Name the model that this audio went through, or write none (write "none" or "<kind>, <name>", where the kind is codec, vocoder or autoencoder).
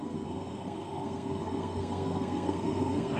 codec, SNAC